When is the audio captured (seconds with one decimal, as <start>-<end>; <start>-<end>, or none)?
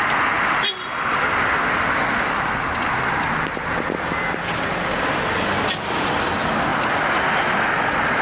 0.0-8.2